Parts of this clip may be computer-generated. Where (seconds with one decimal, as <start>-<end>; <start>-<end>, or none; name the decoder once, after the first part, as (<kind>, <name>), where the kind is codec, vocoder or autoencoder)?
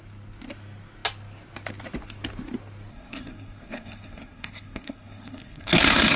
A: 2.9-6.2 (codec, SNAC)